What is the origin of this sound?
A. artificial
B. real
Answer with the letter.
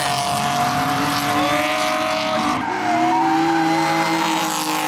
B